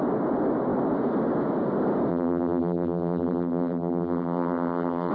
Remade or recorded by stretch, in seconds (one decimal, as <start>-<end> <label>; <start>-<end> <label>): 0.0-2.1 recorded; 2.1-5.1 remade